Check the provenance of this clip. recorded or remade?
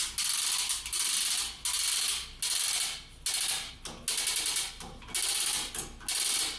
recorded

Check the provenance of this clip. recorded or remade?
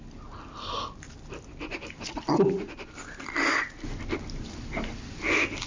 recorded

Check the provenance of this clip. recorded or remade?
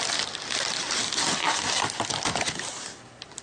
recorded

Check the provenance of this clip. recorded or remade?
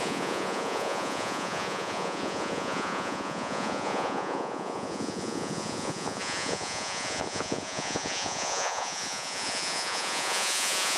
remade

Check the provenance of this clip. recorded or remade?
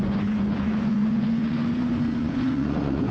remade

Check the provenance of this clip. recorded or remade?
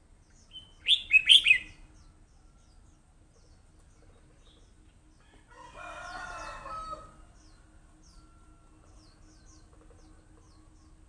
recorded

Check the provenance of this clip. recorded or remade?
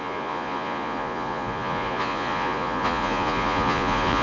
remade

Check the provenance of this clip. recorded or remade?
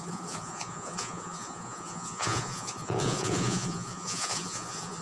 remade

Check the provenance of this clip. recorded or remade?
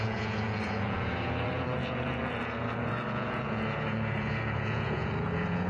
remade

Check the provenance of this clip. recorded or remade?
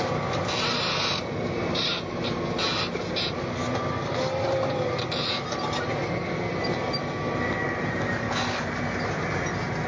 recorded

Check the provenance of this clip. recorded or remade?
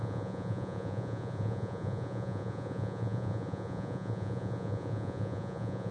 remade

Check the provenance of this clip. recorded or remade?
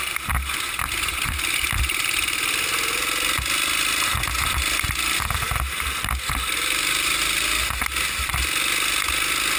recorded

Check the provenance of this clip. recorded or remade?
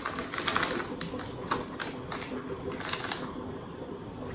recorded